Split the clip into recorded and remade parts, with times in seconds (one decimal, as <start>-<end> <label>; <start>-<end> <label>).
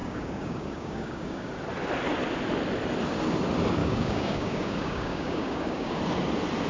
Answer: 0.0-1.5 remade; 1.5-3.8 recorded; 3.8-6.0 remade; 6.0-6.7 recorded